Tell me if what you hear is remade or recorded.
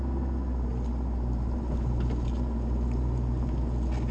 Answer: recorded